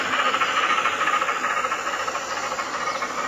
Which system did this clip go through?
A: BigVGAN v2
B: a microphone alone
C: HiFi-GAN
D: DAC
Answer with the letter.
B